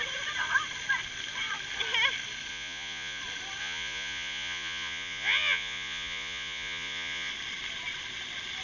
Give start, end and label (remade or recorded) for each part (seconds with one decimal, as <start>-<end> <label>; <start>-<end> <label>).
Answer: 0.0-2.5 recorded; 2.5-3.2 remade; 3.2-3.6 recorded; 3.6-7.3 remade; 7.3-8.6 recorded